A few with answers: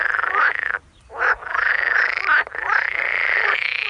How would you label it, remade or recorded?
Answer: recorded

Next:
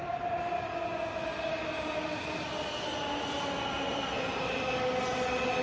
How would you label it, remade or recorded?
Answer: recorded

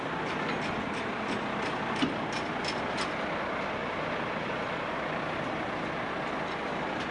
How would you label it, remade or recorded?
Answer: recorded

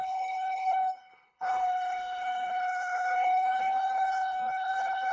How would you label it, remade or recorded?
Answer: remade